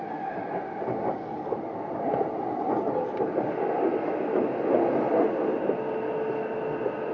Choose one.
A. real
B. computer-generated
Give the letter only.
A